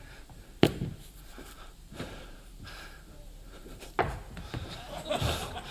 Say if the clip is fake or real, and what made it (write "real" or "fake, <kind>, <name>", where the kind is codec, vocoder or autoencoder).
fake, vocoder, BigVGAN v2